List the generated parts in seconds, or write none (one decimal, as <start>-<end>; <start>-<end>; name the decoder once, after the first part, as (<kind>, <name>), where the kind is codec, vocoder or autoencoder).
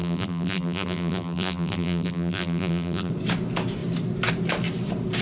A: 0.0-3.1 (vocoder, BigVGAN v2)